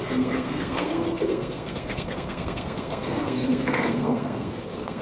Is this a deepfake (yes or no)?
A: yes